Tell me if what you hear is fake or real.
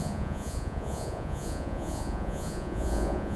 fake